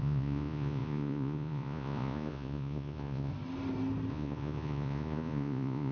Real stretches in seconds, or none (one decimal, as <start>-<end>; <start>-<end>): 3.3-4.1